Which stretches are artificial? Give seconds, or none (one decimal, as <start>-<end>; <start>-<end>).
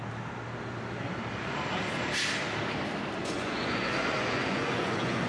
3.2-5.3